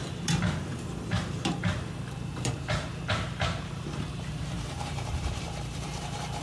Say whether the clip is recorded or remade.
remade